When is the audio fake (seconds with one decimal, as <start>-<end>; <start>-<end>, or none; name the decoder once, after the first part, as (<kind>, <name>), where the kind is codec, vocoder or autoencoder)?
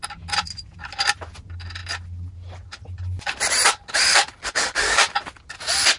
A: none